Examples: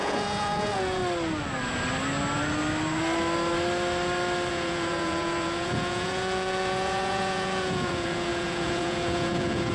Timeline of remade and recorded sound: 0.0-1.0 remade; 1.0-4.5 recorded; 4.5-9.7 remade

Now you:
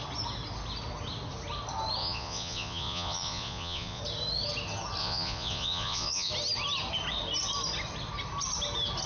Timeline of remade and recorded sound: 0.0-2.0 recorded; 2.0-4.0 remade; 4.0-5.0 recorded; 5.0-6.3 remade; 6.3-9.1 recorded

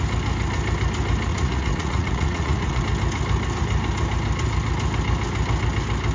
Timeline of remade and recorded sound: 0.0-1.3 recorded; 1.3-2.8 remade; 2.8-6.1 recorded

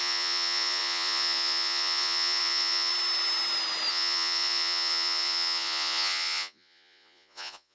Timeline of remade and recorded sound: 0.0-2.9 remade; 2.9-3.9 recorded; 3.9-7.7 remade

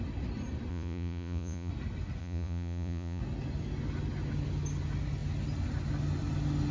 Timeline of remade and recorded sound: 0.0-0.7 recorded; 0.7-1.7 remade; 1.7-2.2 recorded; 2.2-3.2 remade; 3.2-6.7 recorded